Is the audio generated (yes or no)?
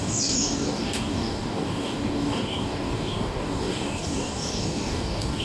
yes